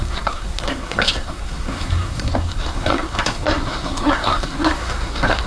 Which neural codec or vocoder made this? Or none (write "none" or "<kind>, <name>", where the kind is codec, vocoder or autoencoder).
codec, SNAC